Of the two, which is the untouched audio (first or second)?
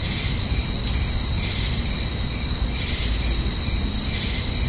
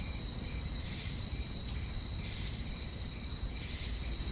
first